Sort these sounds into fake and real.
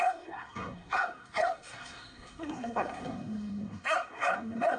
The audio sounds fake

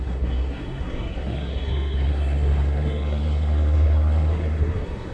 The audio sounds fake